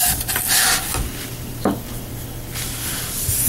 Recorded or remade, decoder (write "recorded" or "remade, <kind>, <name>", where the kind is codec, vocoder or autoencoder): recorded